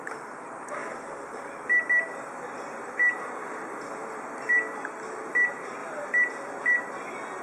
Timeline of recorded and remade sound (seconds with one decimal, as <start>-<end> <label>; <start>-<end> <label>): 0.0-0.8 recorded; 0.8-4.9 remade; 4.9-5.8 recorded; 5.8-7.4 remade